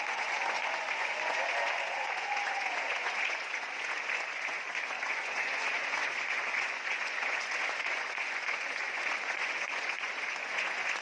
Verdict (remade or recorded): remade